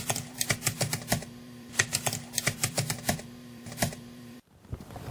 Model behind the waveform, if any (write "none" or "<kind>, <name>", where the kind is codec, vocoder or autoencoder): vocoder, BigVGAN v2